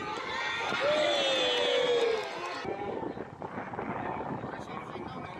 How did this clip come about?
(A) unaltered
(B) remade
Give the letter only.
A